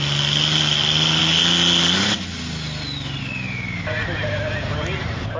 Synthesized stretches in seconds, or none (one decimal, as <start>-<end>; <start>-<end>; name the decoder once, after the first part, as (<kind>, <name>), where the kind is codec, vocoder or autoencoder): none